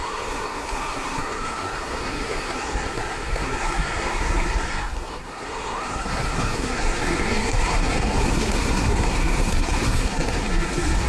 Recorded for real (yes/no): no